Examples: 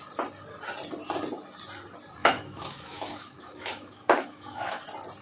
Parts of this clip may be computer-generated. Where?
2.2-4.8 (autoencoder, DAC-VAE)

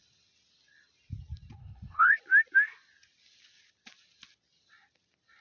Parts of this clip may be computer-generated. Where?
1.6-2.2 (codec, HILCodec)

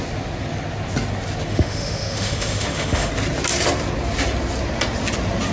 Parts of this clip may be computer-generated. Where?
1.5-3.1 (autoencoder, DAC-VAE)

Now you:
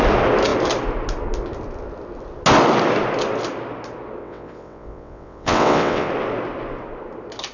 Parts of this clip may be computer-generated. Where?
4.2-6.1 (vocoder, WaveNeXt)

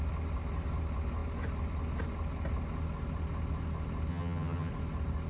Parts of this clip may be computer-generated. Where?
4.1-4.7 (vocoder, HiFi-GAN)